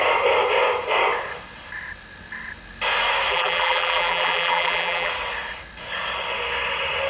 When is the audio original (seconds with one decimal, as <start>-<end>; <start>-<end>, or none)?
0.0-3.3; 5.1-7.1